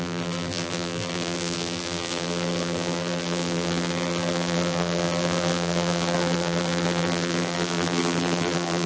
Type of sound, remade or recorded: remade